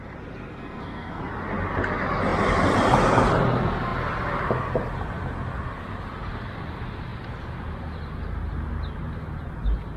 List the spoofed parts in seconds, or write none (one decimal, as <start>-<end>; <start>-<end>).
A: 0.5-1.2

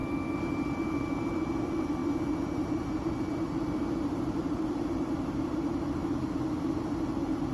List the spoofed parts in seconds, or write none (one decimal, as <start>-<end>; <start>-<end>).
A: 0.5-2.0; 2.6-6.0; 7.1-7.5

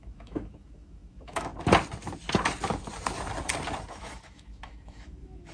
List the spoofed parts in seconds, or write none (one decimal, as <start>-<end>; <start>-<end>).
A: 0.0-1.5; 3.9-5.5

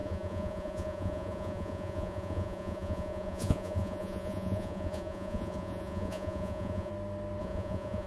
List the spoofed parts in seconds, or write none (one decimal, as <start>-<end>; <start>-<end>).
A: 0.0-6.9; 7.4-8.1

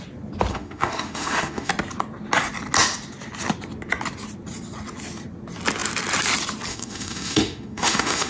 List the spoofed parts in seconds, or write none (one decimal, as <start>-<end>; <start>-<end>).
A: 0.5-1.7; 6.7-8.3